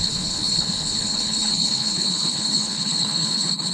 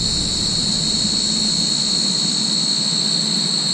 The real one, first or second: second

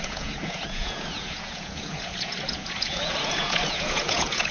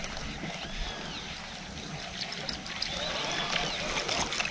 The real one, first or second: second